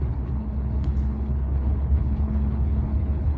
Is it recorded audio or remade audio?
remade